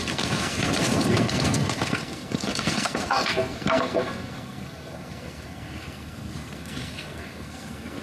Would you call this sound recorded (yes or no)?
no